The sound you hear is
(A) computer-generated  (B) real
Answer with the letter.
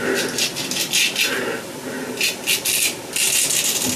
B